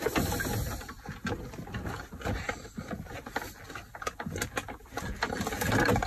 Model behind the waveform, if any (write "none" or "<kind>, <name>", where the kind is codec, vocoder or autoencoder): none